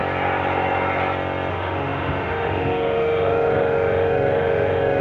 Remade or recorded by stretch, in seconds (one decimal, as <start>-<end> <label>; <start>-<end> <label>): 0.0-1.5 recorded; 1.5-5.0 remade